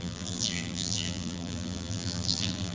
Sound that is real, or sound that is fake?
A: fake